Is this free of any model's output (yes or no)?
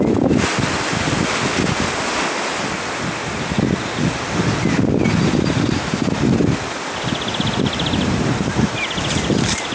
yes